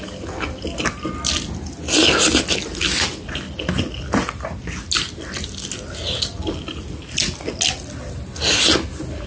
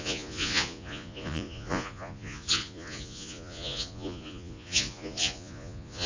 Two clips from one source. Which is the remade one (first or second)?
second